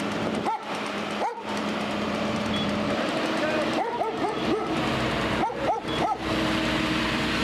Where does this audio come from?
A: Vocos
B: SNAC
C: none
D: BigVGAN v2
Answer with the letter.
D